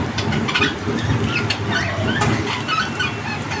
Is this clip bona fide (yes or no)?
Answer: yes